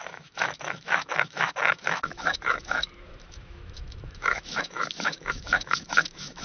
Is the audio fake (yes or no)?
yes